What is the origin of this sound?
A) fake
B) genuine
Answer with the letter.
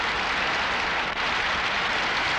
B